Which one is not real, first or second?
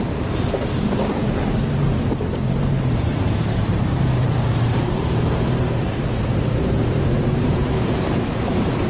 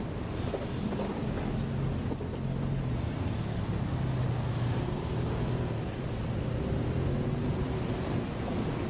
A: first